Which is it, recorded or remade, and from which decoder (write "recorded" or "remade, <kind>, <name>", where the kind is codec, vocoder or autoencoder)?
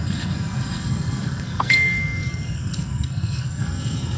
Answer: remade, codec, SNAC